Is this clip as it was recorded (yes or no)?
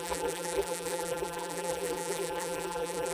no